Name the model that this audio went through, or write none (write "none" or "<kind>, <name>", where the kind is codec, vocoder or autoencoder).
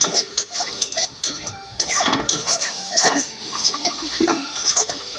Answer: autoencoder, DAC-VAE